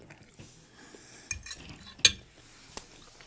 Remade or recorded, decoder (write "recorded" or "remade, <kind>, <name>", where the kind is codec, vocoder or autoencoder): recorded